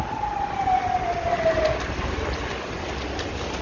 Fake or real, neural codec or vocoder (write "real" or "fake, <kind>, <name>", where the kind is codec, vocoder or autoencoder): real